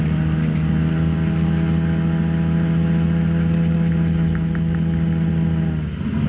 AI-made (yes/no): no